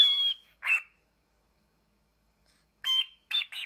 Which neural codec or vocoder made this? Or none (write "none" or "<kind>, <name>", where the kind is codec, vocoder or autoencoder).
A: codec, DAC